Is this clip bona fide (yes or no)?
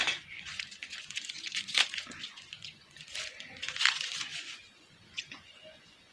no